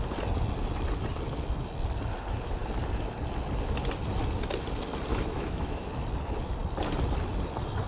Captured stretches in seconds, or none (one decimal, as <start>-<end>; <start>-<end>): 0.0-5.1; 5.9-7.9